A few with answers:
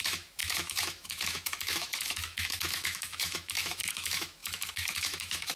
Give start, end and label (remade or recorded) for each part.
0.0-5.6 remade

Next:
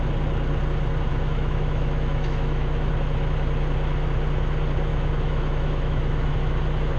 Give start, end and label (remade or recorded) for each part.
0.0-1.1 recorded; 1.1-2.9 remade; 2.9-4.9 recorded; 4.9-6.3 remade; 6.3-7.0 recorded

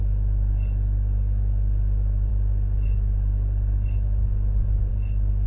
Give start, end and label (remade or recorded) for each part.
0.0-5.5 recorded